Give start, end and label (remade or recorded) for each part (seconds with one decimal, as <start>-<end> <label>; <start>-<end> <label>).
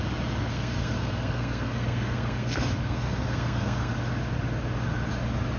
0.0-0.5 recorded; 0.5-3.9 remade; 3.9-5.6 recorded